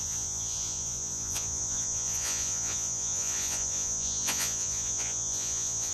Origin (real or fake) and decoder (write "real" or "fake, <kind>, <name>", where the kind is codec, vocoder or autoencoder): fake, vocoder, Vocos